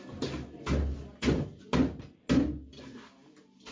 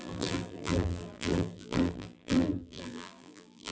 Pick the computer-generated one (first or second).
second